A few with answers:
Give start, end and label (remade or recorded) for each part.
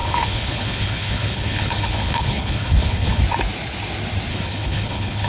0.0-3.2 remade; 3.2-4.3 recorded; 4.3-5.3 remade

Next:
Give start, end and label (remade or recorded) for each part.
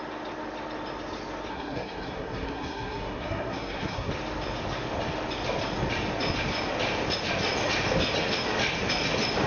0.0-1.5 recorded; 1.5-4.1 remade; 4.1-9.5 recorded